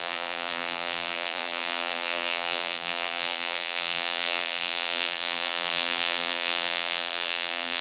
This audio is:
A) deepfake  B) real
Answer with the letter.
A